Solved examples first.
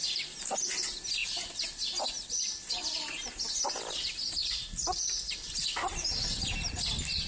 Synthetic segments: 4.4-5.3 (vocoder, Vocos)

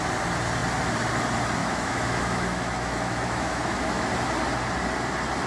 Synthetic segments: 1.6-4.1 (autoencoder, DAC-VAE)

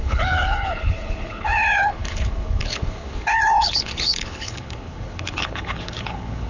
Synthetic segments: 0.0-6.5 (codec, HILCodec)

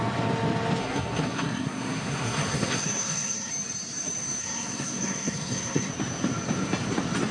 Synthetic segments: 0.8-3.5 (codec, SNAC); 4.4-5.9